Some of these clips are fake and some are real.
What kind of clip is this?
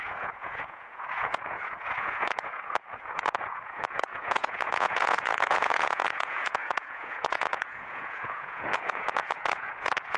fake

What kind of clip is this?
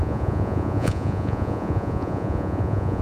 fake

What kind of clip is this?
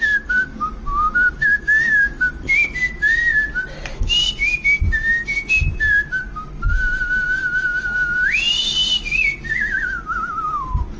real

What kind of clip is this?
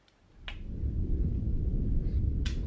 real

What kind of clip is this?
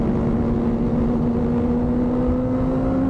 real